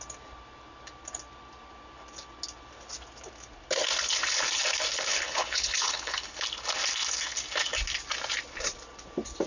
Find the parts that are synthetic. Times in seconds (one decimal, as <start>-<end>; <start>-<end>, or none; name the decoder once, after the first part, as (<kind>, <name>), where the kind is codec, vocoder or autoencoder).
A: 5.1-6.3 (codec, HILCodec)